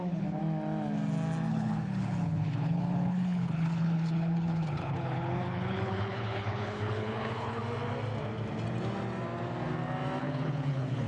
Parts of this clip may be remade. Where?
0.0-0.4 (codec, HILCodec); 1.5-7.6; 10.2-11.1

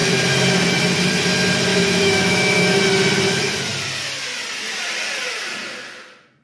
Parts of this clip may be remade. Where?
1.7-2.8 (autoencoder, DAC-VAE)

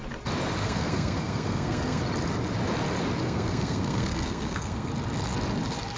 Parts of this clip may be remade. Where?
0.6-2.0 (codec, SNAC); 3.2-4.9

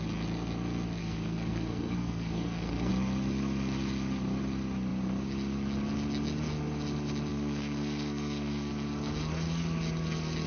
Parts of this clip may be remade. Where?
1.0-2.9 (codec, SNAC); 7.3-8.7

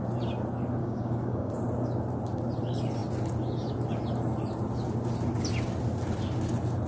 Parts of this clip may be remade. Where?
0.8-1.5 (codec, DAC)

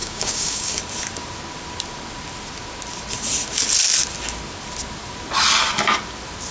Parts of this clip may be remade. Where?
0.0-0.8 (codec, DAC)